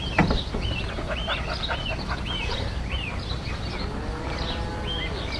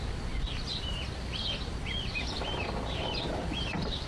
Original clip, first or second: first